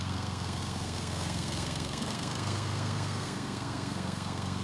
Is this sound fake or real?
fake